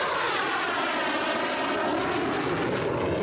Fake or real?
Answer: real